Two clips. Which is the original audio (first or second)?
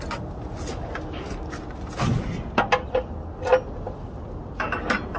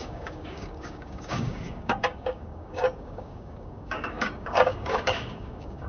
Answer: first